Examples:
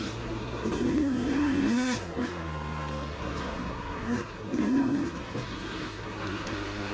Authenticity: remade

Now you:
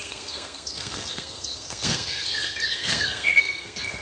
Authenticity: remade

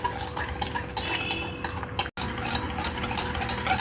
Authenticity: recorded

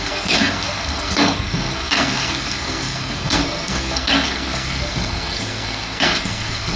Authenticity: remade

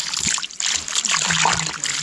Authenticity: recorded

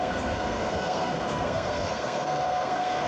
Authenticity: remade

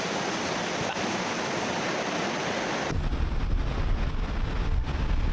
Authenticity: recorded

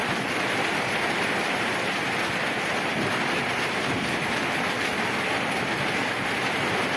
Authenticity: recorded